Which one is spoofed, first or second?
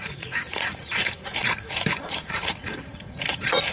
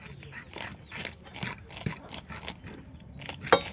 first